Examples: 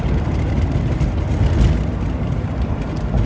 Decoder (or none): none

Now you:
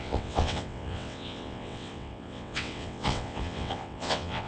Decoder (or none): vocoder, WaveNeXt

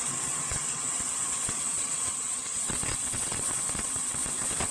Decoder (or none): vocoder, WaveNeXt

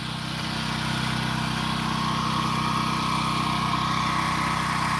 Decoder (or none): none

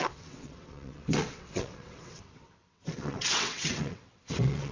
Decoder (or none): vocoder, WaveNeXt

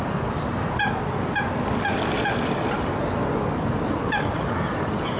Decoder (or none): none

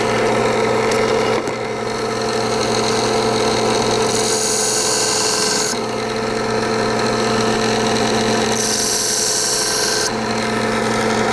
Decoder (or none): none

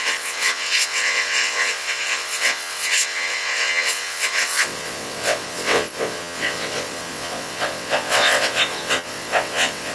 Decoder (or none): vocoder, WaveNeXt